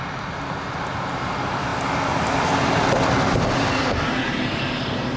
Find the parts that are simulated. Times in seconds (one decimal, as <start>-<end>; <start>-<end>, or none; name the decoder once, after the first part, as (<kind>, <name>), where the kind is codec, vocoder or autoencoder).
none